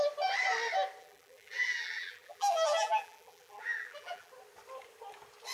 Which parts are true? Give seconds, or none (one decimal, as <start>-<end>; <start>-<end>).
0.0-1.0; 4.3-5.5